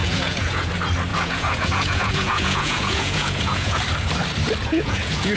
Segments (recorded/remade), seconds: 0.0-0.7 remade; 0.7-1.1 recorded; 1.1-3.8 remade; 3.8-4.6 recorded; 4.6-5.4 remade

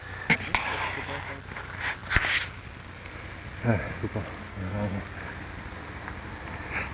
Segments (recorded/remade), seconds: 0.0-4.5 recorded; 4.5-5.0 remade; 5.0-6.9 recorded

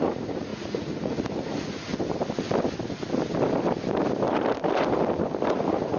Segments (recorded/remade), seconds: 0.0-1.9 remade; 1.9-5.5 recorded; 5.5-6.0 remade